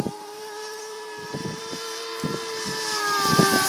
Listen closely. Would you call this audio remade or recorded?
remade